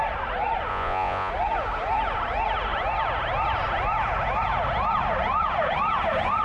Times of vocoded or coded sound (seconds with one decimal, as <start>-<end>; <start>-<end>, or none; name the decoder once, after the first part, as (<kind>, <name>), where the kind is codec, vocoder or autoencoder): 0.7-1.3 (vocoder, Vocos)